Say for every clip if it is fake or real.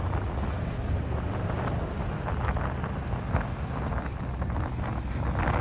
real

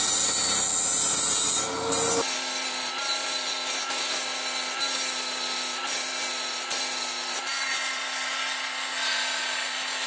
fake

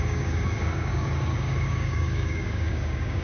fake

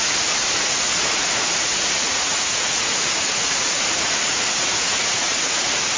fake